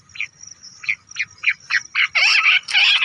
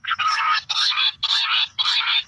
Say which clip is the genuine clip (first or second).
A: first